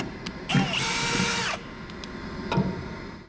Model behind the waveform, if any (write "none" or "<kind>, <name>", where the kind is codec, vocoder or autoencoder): none